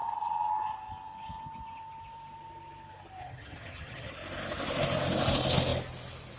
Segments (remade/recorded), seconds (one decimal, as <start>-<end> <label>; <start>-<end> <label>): 0.0-3.2 recorded; 3.2-4.1 remade; 4.1-6.4 recorded